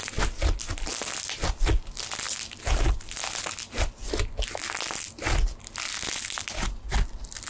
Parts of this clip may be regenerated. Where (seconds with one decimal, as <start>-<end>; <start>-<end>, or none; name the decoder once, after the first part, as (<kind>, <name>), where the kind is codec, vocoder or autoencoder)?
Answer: none